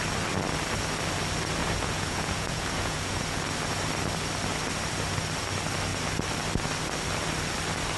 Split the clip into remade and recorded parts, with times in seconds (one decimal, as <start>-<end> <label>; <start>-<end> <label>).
0.0-1.6 recorded; 1.6-3.4 remade; 3.4-8.0 recorded